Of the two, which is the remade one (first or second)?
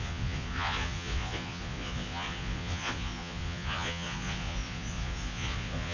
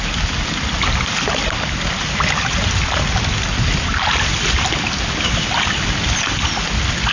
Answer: first